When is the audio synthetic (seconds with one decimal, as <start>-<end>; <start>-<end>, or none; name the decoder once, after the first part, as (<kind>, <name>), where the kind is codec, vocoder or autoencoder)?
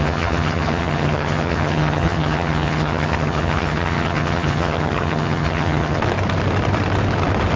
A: 0.0-6.0 (vocoder, HiFi-GAN)